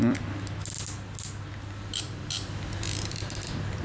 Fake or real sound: real